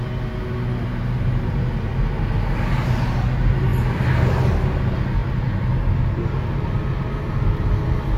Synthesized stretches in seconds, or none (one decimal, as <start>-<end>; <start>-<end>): none